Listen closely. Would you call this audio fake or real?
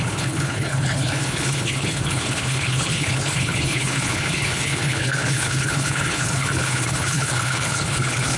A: fake